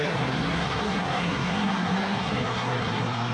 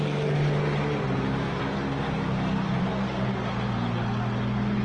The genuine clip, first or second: second